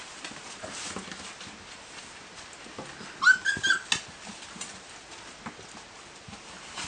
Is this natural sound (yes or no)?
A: yes